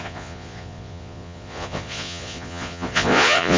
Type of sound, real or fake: fake